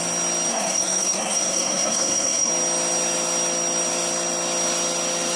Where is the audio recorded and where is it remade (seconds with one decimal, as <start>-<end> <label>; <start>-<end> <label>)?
0.0-0.5 recorded; 0.5-2.5 remade; 2.5-5.4 recorded